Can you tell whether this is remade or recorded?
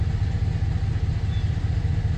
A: recorded